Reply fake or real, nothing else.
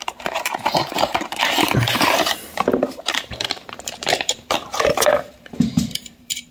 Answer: fake